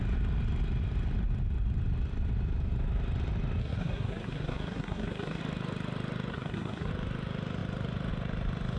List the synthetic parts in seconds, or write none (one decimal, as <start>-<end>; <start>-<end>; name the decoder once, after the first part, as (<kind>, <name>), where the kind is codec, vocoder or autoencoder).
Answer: 3.6-5.4 (codec, SNAC); 6.3-6.9